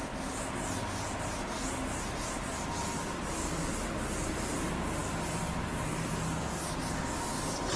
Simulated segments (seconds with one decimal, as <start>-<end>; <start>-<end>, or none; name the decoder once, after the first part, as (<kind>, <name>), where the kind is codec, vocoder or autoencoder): none